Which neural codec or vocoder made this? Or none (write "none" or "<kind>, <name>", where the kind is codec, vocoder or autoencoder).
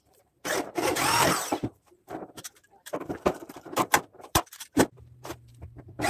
vocoder, BigVGAN v2